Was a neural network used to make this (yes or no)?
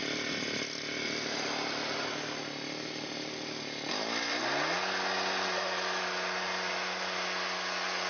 no